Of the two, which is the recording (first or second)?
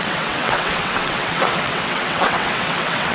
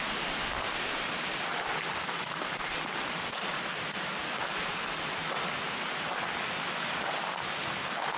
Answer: second